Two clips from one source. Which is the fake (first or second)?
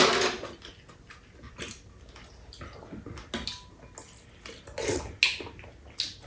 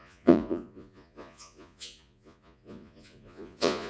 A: second